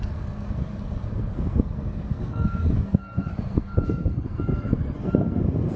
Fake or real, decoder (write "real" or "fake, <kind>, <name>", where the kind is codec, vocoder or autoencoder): fake, codec, SNAC